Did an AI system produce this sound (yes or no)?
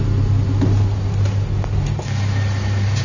no